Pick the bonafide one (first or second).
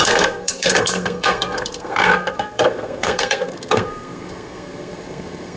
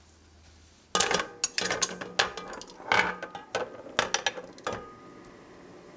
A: second